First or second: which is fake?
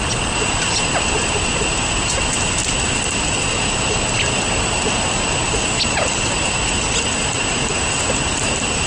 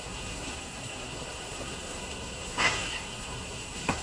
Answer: second